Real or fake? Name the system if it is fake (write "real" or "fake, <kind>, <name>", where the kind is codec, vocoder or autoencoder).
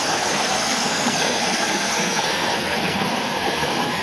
fake, codec, SNAC